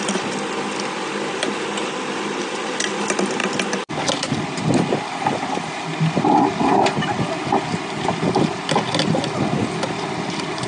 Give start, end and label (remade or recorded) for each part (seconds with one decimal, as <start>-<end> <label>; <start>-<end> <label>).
0.0-10.7 recorded